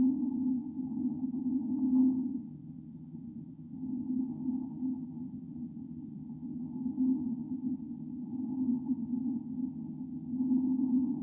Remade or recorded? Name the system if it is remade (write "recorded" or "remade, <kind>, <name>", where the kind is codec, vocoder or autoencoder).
remade, vocoder, HiFi-GAN